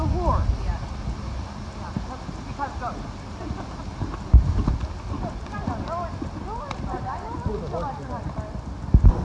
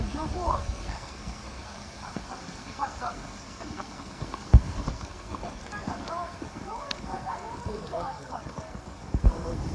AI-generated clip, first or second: second